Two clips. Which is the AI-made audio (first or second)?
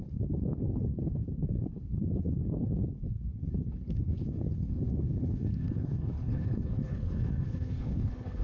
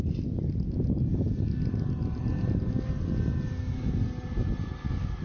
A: first